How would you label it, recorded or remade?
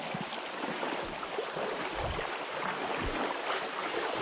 recorded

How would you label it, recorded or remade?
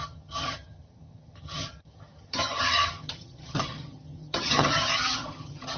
remade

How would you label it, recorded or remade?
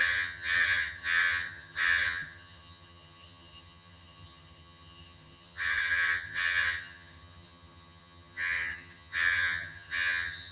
remade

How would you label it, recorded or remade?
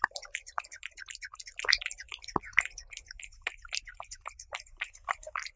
recorded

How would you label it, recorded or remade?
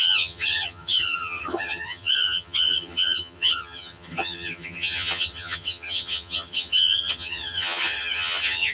remade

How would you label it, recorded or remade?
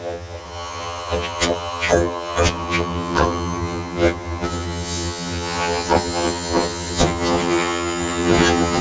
remade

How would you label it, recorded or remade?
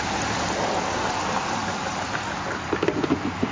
recorded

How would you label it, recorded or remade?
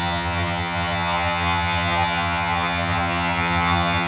remade